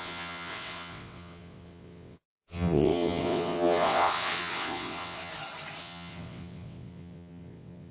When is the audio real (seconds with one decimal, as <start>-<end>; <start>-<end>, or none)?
5.3-5.8